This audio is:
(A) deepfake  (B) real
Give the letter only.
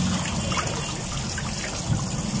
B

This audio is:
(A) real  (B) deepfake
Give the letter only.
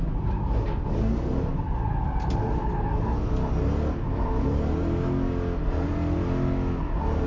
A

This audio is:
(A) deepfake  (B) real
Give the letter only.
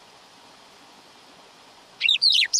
A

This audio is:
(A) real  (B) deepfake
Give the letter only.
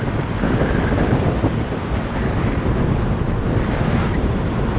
A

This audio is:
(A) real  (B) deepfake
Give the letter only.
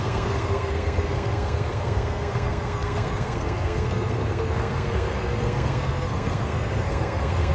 B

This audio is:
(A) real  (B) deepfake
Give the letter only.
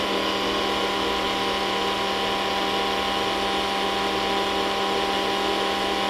A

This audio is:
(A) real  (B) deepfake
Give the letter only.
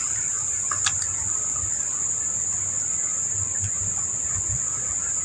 A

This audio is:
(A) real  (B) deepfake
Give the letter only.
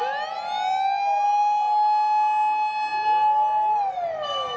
A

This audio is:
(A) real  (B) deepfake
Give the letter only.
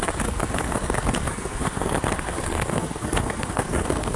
B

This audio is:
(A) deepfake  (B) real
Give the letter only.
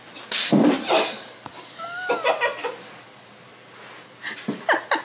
B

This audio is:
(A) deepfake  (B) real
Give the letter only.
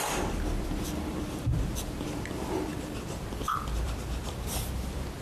A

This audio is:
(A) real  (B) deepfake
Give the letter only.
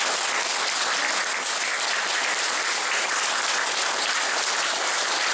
A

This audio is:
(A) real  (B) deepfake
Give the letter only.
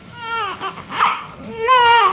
B